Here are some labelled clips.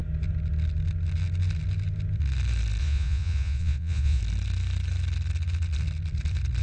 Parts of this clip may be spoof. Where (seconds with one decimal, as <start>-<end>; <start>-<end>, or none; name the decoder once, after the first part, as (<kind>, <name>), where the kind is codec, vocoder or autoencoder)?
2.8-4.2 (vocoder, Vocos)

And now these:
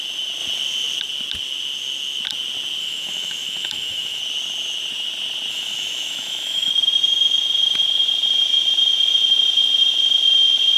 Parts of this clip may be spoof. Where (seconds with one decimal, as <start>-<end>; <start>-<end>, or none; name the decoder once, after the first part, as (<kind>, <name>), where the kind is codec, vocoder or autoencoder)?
2.8-4.2 (autoencoder, DAC-VAE); 5.5-6.7

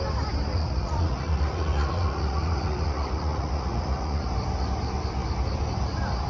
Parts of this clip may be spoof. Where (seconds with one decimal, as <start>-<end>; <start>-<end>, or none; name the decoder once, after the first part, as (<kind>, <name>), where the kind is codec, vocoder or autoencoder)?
0.5-4.3 (vocoder, Vocos)